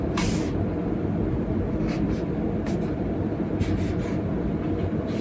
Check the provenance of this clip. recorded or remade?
remade